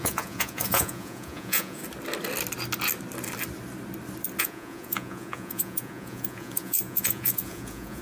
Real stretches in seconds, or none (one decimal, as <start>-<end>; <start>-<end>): 1.8-4.4